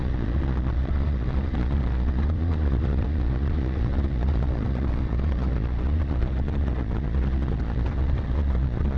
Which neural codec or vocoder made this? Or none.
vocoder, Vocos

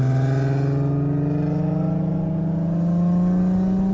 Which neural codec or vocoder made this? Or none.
none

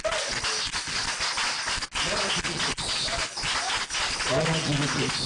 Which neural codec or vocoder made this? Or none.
none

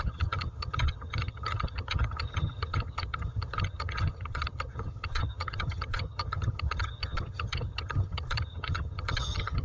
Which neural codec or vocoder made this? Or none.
vocoder, HiFi-GAN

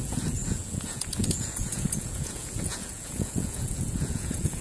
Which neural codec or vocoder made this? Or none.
vocoder, Vocos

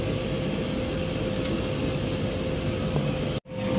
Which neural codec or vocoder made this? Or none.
none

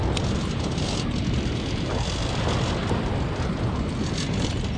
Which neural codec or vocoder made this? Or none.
none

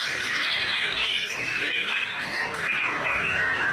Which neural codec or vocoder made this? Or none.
codec, DAC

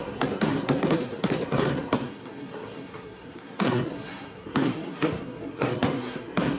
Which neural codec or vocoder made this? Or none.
codec, SNAC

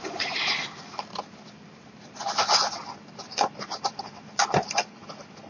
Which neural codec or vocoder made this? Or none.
none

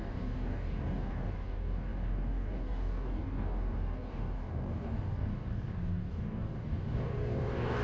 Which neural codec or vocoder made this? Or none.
codec, DAC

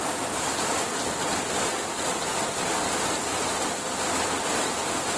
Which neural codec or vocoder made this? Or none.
none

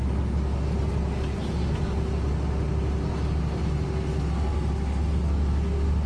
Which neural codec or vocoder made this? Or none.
none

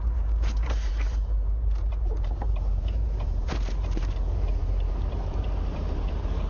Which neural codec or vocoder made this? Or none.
vocoder, BigVGAN v2